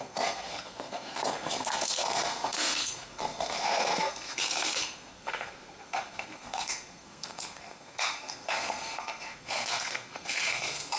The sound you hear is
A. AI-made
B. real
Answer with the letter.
A